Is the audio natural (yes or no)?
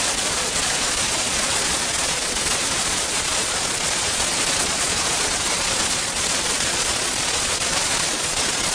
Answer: no